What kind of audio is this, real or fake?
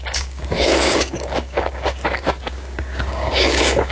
fake